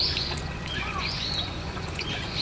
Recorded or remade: remade